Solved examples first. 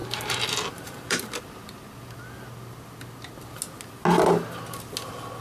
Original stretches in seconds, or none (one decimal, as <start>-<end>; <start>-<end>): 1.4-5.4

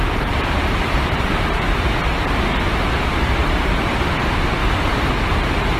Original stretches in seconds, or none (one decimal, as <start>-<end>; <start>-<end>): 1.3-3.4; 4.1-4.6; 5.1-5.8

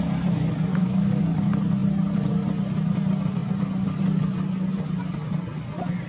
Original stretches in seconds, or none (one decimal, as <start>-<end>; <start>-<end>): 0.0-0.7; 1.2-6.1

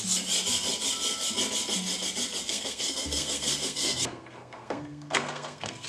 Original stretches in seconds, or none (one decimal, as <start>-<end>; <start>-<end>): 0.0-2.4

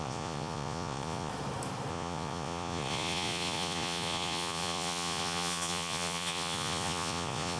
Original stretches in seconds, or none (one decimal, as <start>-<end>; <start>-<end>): 1.3-1.9

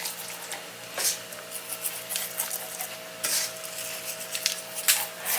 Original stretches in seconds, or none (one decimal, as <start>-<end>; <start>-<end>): 0.0-5.4